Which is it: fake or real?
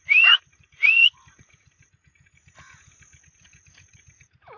fake